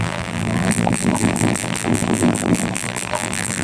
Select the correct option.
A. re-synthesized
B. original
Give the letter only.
A